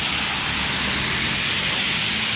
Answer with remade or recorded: recorded